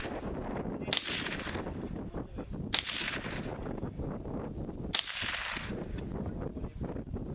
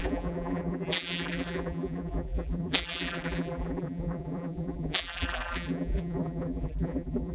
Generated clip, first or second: second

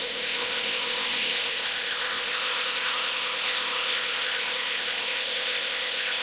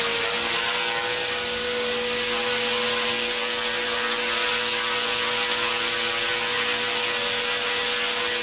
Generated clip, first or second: first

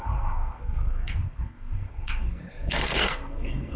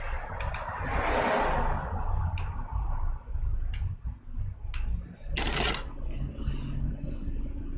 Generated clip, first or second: first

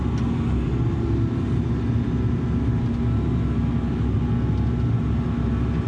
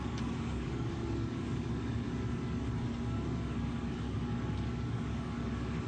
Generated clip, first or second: second